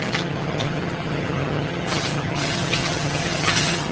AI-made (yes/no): yes